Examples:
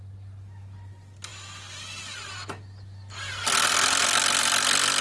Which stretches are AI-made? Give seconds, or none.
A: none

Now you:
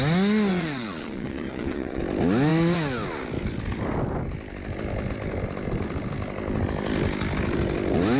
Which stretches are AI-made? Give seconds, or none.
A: 0.5-2.0 (vocoder, Vocos)

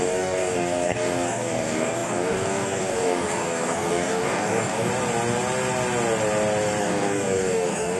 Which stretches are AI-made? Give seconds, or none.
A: 0.0-4.9 (codec, DAC); 6.8-8.0

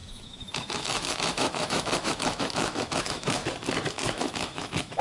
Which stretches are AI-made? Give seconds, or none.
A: 0.0-3.4 (autoencoder, DAC-VAE); 3.9-5.0

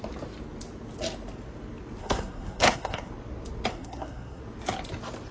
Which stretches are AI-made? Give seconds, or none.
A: 2.0-3.1 (codec, SNAC); 3.7-4.4